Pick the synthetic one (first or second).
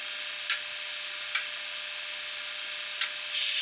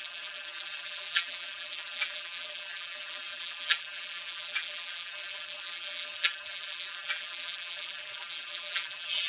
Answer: second